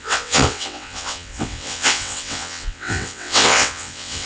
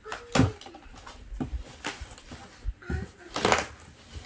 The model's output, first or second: first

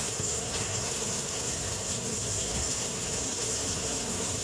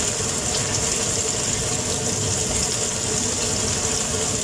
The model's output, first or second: first